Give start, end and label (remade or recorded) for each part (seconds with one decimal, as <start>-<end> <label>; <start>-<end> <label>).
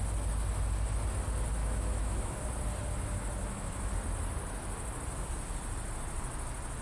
0.0-1.6 recorded; 1.6-2.4 remade; 2.4-3.4 recorded; 3.4-3.9 remade; 3.9-6.8 recorded